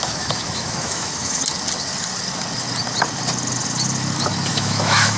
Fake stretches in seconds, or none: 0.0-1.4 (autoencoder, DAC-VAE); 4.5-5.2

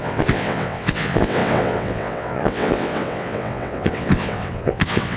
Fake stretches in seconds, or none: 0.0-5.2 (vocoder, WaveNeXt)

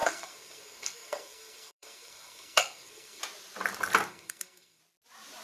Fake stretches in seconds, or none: 0.0-3.2 (codec, SNAC); 4.1-4.8

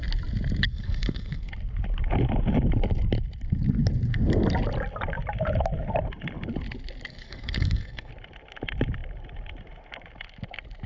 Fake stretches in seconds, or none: 0.7-1.5 (codec, SNAC); 7.1-8.1

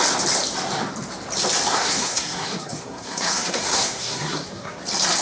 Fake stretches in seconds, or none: 1.7-4.8 (codec, SNAC)

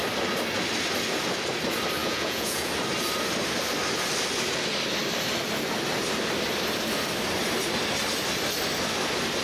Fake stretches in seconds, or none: 2.0-2.7 (vocoder, Vocos)